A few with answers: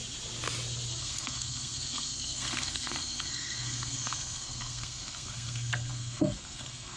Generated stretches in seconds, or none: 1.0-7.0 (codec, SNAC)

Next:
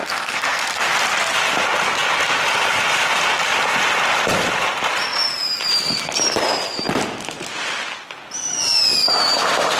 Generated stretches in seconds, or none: 0.0-0.9 (codec, SNAC)